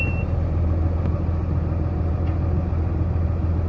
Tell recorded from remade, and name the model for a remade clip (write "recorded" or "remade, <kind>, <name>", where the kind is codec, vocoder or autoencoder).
recorded